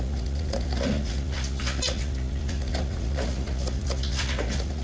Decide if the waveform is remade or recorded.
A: remade